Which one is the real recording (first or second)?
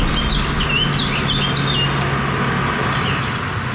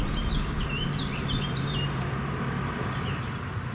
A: first